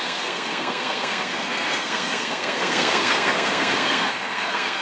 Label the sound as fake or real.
fake